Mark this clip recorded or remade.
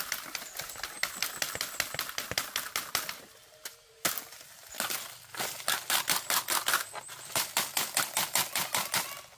recorded